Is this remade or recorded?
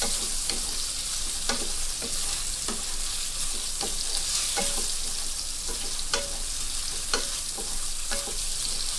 recorded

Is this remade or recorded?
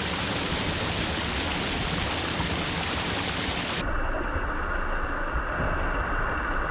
recorded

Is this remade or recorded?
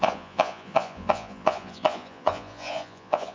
remade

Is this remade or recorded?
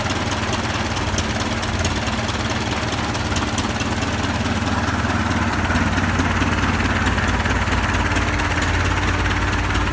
recorded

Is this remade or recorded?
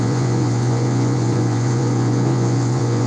remade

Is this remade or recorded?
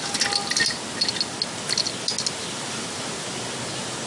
recorded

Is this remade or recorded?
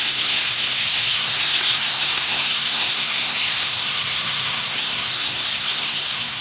remade